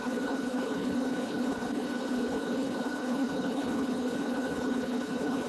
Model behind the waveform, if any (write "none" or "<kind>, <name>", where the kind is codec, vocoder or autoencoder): codec, HILCodec